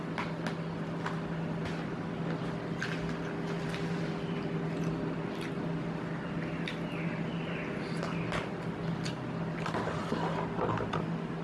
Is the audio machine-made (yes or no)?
no